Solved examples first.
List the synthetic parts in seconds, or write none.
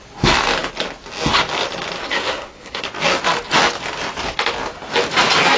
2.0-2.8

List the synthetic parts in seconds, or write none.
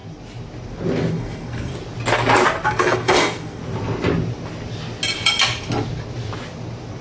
1.1-1.7; 2.7-3.6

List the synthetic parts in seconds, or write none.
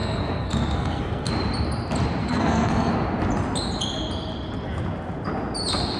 0.0-1.3; 2.2-2.9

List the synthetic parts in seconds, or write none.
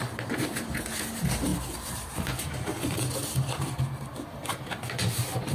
none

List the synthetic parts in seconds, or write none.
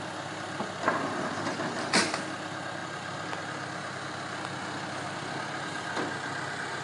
none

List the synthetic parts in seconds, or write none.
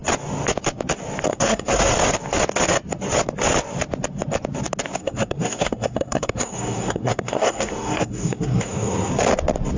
1.3-1.9; 5.0-9.1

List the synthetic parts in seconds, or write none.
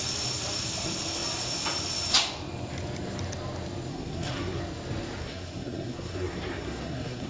3.9-4.6; 5.2-7.3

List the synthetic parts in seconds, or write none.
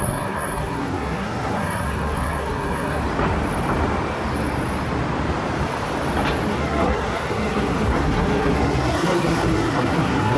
0.0-3.0; 6.5-10.4